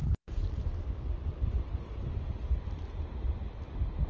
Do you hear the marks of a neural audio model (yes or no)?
no